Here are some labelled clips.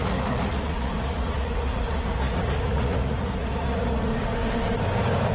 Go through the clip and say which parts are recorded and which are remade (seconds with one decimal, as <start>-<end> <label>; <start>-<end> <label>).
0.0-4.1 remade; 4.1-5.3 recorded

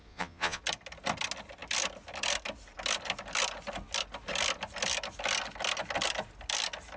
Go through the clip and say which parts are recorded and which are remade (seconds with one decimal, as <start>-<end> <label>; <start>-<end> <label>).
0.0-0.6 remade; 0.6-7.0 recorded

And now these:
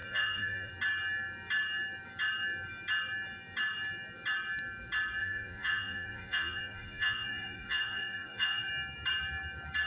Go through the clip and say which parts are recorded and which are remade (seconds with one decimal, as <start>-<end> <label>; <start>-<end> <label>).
0.0-0.7 remade; 0.7-5.2 recorded; 5.2-8.7 remade; 8.7-9.9 recorded